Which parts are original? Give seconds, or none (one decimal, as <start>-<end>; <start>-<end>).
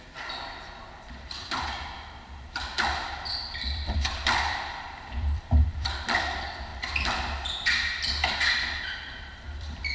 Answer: 6.7-8.8